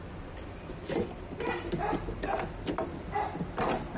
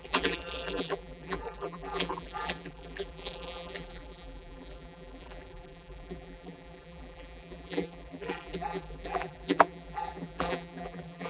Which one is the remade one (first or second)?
second